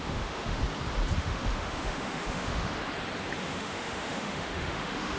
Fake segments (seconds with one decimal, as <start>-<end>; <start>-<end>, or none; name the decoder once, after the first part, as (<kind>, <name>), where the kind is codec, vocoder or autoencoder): 0.0-0.6 (autoencoder, DAC-VAE); 1.2-2.8; 3.4-5.2